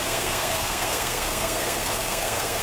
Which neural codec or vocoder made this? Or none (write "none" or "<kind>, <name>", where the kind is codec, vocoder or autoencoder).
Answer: codec, SNAC